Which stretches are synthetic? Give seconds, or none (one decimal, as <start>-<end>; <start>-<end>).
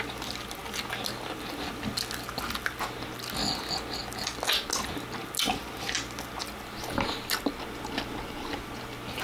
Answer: none